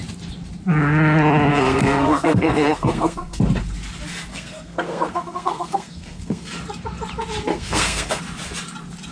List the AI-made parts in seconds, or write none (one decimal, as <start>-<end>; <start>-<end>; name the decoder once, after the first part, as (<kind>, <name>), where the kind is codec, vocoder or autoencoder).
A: 1.5-3.4 (codec, SNAC); 4.3-6.5; 7.5-8.2